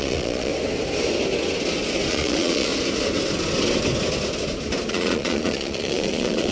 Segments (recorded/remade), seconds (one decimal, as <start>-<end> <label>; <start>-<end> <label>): 0.0-0.5 remade; 0.5-2.1 recorded; 2.1-2.7 remade; 2.7-4.9 recorded; 4.9-6.5 remade